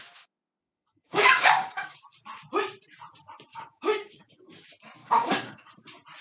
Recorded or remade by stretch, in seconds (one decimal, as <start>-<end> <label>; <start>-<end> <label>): 0.0-0.6 recorded; 0.6-2.0 remade; 2.0-3.5 recorded; 3.5-4.5 remade; 4.5-5.0 recorded; 5.0-5.7 remade; 5.7-6.2 recorded